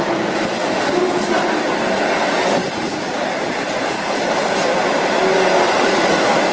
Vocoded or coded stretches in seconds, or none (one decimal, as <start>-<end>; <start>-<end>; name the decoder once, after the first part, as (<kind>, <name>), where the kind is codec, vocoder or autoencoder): 2.6-4.4 (vocoder, BigVGAN v2)